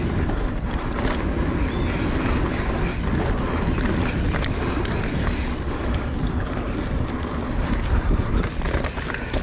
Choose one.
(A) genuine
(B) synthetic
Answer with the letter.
A